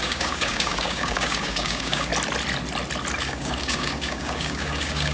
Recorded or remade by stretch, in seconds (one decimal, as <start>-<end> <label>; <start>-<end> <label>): 0.0-2.1 remade; 2.1-3.2 recorded; 3.2-5.1 remade